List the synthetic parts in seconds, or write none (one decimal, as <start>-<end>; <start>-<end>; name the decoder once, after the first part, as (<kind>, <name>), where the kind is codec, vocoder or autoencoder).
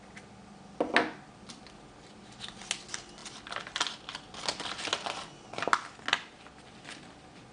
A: none